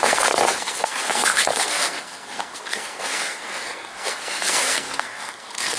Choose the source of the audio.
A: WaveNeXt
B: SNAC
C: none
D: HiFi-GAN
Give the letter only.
B